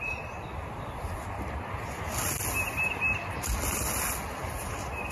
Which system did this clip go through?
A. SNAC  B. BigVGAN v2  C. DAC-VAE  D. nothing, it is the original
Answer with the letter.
D